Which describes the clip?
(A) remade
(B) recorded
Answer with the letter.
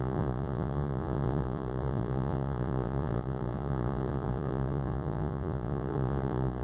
A